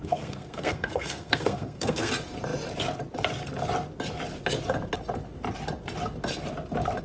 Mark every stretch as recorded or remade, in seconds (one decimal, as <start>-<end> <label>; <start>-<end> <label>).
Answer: 0.0-2.1 remade; 2.1-7.0 recorded